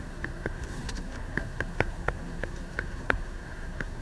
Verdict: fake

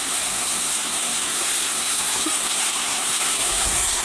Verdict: fake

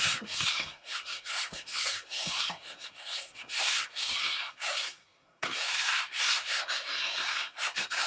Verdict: fake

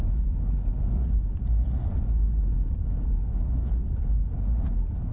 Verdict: real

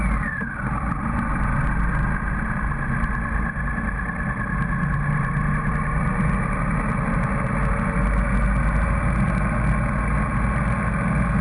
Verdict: real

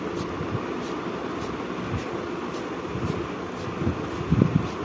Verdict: real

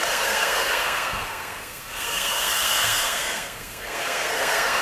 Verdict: fake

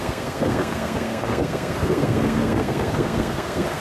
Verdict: fake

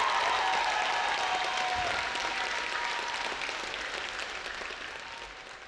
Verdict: real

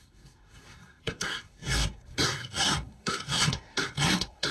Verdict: fake